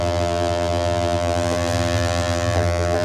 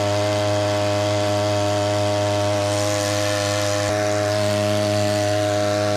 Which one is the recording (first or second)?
second